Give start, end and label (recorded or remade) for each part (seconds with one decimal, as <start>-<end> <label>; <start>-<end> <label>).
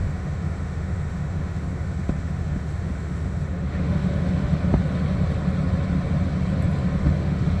0.0-4.6 remade; 4.6-7.0 recorded; 7.0-7.6 remade